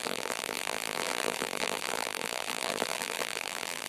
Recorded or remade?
remade